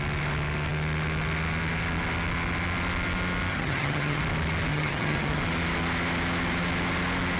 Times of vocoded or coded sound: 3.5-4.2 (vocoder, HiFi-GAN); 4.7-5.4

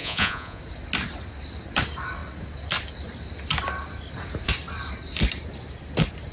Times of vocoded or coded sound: 0.0-0.6 (vocoder, Vocos)

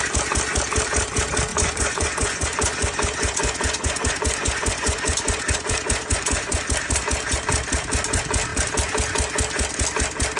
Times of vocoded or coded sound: 1.5-6.6 (vocoder, Vocos)

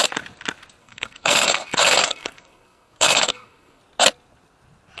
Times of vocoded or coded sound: 0.8-3.8 (codec, SNAC)

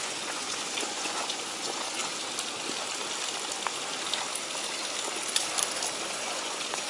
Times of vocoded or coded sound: 0.0-2.0 (vocoder, Vocos); 6.1-6.9